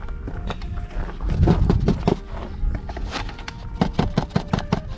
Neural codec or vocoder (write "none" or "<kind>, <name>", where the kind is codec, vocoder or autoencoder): none